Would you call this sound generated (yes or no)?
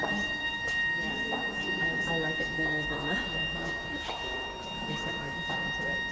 no